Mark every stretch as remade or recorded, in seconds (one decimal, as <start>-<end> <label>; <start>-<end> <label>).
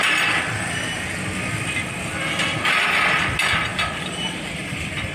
0.0-3.7 recorded; 3.7-5.1 remade